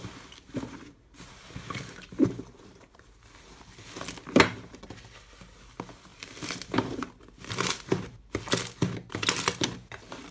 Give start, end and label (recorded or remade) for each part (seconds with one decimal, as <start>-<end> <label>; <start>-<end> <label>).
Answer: 0.0-3.2 remade; 3.2-6.1 recorded; 6.1-7.1 remade; 7.1-10.3 recorded